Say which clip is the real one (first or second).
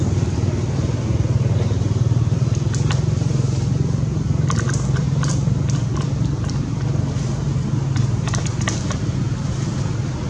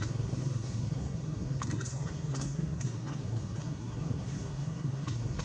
first